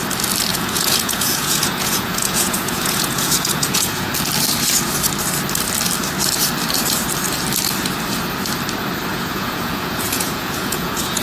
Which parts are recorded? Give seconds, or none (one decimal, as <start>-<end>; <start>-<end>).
0.0-0.5; 4.1-9.1